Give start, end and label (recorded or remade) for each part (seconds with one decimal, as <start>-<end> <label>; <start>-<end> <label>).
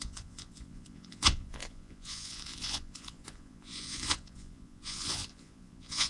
0.0-6.1 remade